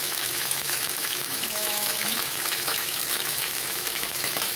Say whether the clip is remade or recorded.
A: remade